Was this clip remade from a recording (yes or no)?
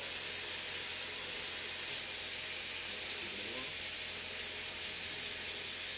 no